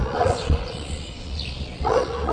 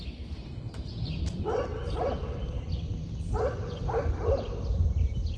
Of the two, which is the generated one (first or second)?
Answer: first